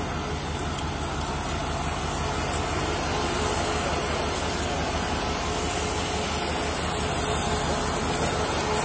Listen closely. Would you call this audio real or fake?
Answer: real